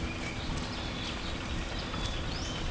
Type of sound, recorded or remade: recorded